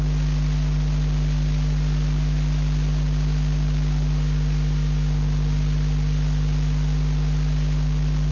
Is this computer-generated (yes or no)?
no